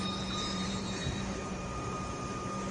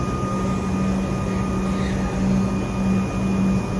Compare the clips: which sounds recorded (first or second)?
second